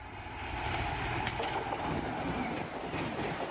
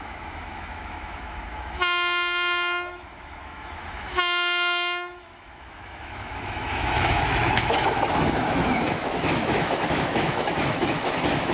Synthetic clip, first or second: second